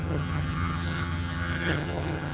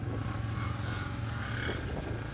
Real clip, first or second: second